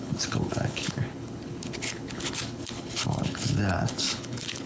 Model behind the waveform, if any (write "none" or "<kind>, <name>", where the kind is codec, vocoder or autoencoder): codec, HILCodec